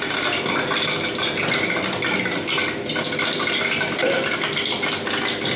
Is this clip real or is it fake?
real